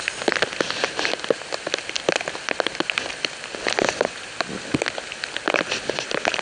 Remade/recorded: recorded